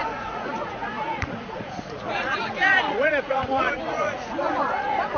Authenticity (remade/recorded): remade